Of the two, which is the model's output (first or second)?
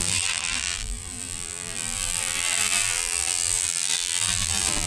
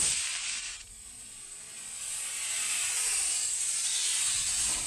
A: first